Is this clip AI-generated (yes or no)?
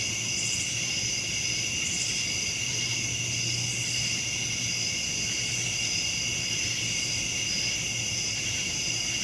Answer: no